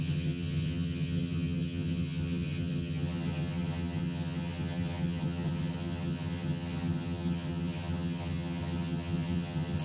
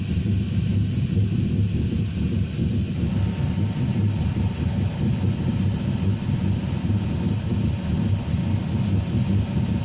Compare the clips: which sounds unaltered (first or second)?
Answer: second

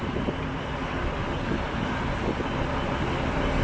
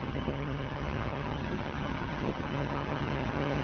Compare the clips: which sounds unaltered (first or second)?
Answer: first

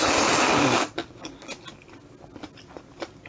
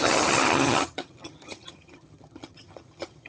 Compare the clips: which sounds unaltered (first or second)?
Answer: first